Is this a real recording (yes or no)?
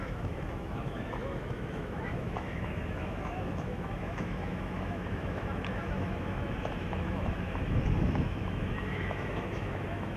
no